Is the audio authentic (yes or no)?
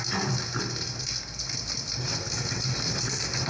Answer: yes